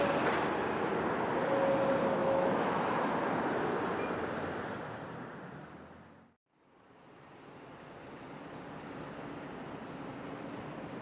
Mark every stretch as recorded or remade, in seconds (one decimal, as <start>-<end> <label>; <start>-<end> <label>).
0.0-2.2 recorded; 2.2-2.8 remade; 2.8-11.0 recorded